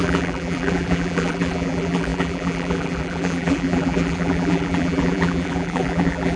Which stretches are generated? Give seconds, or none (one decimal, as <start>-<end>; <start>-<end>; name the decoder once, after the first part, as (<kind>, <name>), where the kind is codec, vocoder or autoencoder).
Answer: 0.0-6.4 (vocoder, BigVGAN v2)